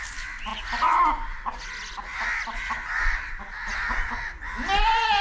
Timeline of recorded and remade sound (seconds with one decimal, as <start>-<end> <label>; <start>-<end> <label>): 0.0-5.2 recorded